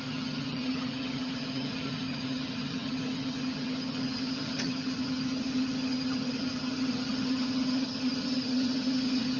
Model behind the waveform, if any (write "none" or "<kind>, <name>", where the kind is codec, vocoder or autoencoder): vocoder, HiFi-GAN